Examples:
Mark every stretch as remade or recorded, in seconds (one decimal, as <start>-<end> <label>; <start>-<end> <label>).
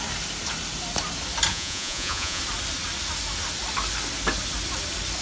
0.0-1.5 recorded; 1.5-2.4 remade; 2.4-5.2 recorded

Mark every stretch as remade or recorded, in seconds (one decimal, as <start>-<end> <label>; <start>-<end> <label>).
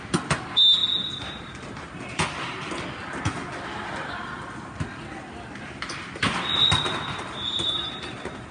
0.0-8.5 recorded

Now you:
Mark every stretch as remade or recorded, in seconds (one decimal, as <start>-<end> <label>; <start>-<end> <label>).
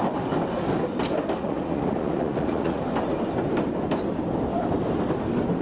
0.0-1.4 recorded; 1.4-2.8 remade; 2.8-5.6 recorded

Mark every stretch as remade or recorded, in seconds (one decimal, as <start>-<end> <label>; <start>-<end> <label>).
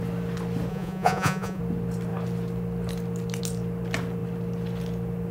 0.0-0.7 recorded; 0.7-1.6 remade; 1.6-5.3 recorded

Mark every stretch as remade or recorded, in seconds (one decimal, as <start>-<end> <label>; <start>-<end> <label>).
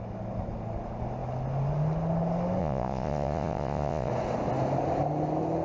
0.0-2.6 recorded; 2.6-4.1 remade; 4.1-5.6 recorded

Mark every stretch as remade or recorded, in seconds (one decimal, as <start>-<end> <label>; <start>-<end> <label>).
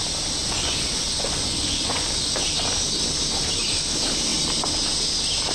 0.0-0.4 recorded; 0.4-2.5 remade; 2.5-5.5 recorded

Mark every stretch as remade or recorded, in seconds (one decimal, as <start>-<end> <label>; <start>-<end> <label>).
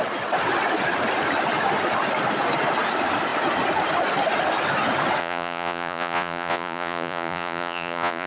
0.0-5.2 recorded; 5.2-8.3 remade